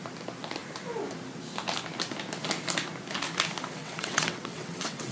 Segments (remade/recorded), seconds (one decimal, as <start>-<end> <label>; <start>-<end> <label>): 0.0-3.8 recorded; 3.8-5.1 remade